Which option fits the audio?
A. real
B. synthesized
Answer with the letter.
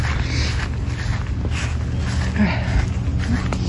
A